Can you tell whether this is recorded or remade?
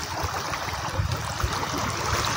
recorded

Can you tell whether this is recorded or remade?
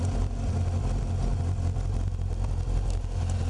recorded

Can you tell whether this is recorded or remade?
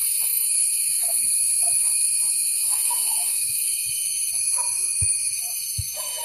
remade